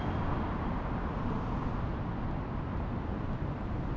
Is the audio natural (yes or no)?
yes